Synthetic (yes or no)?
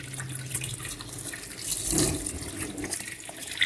no